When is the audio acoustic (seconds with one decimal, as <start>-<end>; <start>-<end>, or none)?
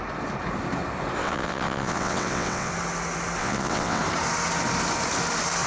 0.0-1.2; 2.7-3.4; 4.0-5.7